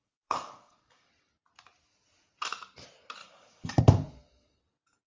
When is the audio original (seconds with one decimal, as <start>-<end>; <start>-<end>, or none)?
1.1-3.2; 3.8-5.1